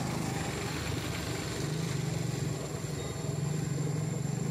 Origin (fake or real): real